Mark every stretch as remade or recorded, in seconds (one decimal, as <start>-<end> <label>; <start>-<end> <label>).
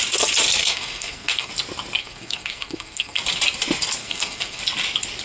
0.0-0.6 recorded; 0.6-1.5 remade; 1.5-2.0 recorded; 2.0-3.2 remade; 3.2-4.0 recorded; 4.0-4.6 remade; 4.6-5.2 recorded